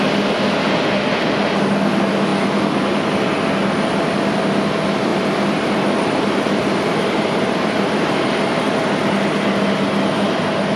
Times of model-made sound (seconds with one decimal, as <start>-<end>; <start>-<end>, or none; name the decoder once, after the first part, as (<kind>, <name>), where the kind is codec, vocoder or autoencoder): 5.1-9.1 (vocoder, BigVGAN v2)